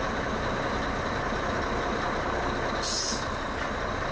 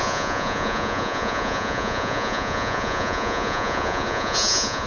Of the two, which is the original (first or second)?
first